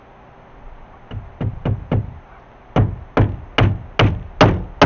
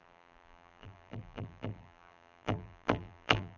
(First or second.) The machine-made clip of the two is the second